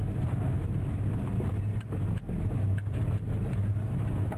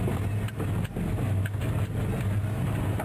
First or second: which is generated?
first